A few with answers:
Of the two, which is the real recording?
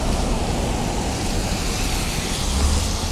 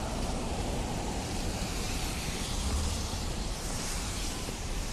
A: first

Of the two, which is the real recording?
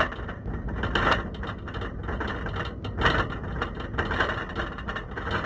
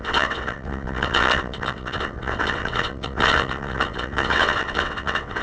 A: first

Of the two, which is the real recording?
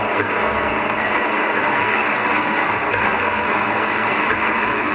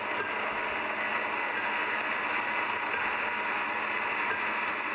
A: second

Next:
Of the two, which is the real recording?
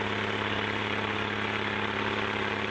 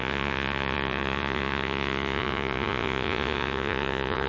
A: first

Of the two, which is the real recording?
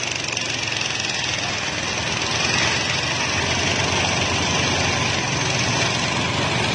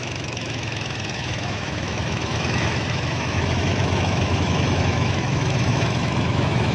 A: first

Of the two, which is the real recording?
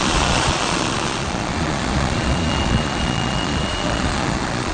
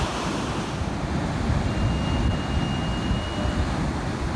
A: second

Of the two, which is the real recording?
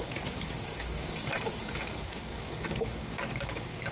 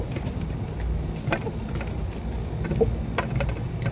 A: second